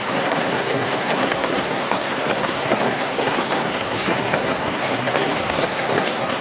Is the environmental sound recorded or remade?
remade